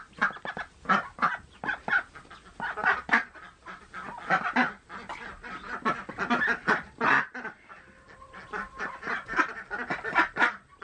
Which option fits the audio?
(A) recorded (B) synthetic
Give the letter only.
A